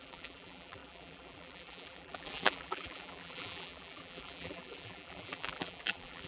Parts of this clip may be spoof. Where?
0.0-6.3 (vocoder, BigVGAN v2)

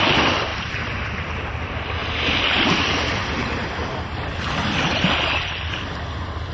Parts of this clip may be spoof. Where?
0.5-1.4 (vocoder, BigVGAN v2); 2.0-5.9

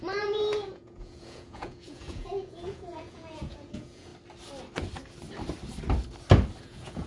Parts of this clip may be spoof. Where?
0.0-4.1 (vocoder, Vocos); 6.6-7.1

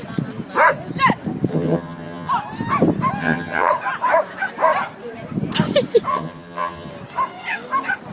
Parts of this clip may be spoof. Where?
1.5-2.3 (vocoder, HiFi-GAN); 3.2-3.7; 6.1-6.9